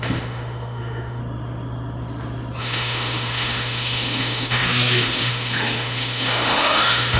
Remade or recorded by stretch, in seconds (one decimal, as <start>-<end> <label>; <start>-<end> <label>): 0.0-1.2 remade; 1.2-2.6 recorded; 2.6-7.2 remade